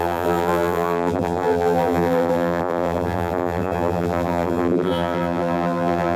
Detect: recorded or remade remade